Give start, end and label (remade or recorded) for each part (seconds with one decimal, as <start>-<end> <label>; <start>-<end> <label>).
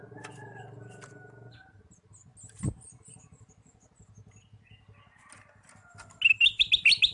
0.0-7.1 recorded